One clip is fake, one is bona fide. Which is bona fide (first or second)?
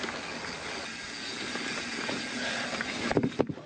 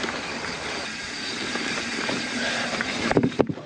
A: first